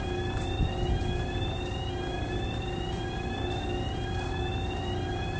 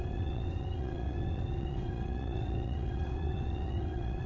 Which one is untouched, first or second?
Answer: first